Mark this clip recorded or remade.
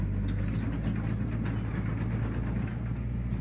recorded